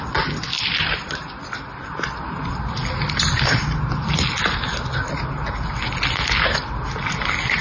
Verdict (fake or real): real